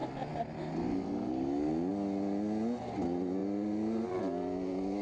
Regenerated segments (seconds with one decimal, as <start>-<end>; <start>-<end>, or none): none